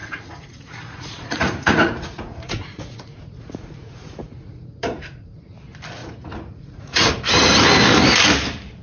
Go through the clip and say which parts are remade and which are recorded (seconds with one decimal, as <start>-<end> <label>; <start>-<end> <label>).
0.0-5.3 remade; 5.3-6.0 recorded; 6.0-7.1 remade; 7.1-8.8 recorded